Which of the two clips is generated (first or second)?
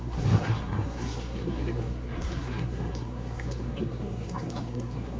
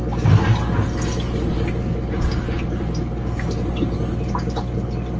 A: first